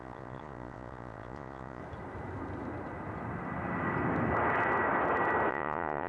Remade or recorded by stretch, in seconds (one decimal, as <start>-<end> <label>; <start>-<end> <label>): 0.0-1.8 remade; 1.8-5.5 recorded; 5.5-6.1 remade